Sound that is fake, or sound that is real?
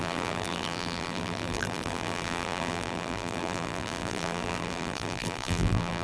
fake